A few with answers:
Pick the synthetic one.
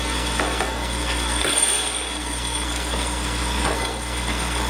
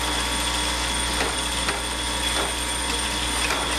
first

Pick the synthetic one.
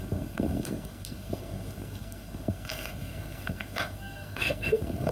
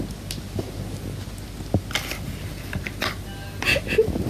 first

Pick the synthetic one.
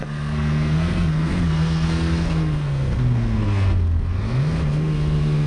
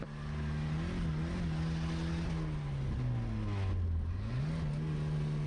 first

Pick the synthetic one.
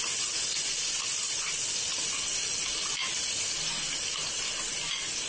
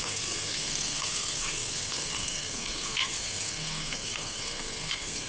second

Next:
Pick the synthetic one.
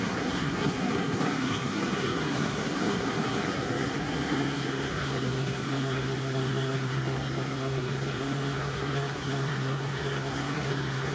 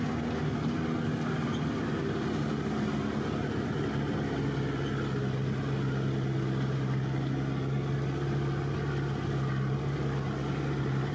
first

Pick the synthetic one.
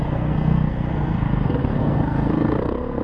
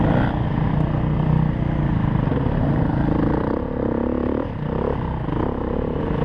first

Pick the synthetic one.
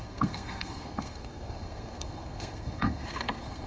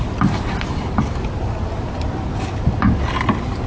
first